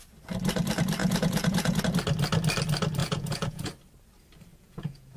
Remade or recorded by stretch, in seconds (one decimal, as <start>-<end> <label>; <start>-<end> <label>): 0.0-1.0 recorded; 1.0-1.8 remade; 1.8-3.0 recorded; 3.0-3.7 remade; 3.7-4.5 recorded; 4.5-5.2 remade